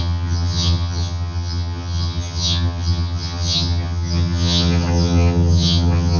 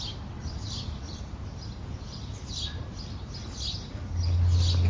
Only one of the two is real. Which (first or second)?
second